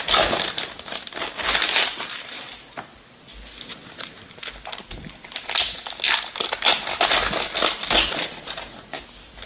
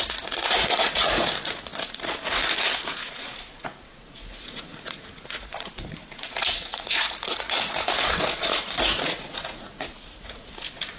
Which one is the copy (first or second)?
second